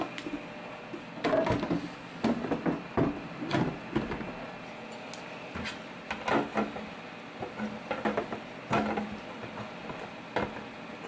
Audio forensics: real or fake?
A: real